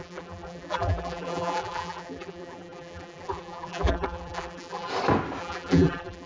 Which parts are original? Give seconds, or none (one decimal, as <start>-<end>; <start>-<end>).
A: 4.9-5.4